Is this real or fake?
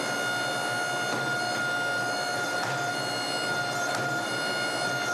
real